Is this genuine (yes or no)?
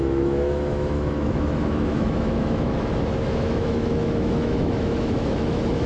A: no